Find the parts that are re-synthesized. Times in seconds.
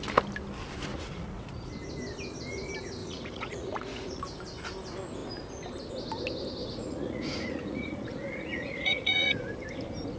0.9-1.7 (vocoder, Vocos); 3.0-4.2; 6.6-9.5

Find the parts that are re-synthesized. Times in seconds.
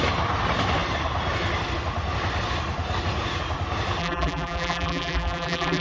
4.0-5.8 (vocoder, BigVGAN v2)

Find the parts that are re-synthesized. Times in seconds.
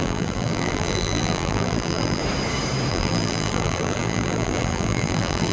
0.0-2.2 (vocoder, BigVGAN v2); 2.9-5.5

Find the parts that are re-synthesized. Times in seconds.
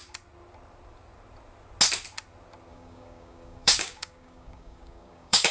2.7-5.5 (codec, DAC)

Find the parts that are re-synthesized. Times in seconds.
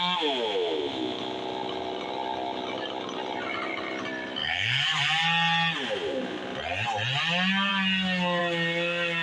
4.4-5.0 (codec, DAC)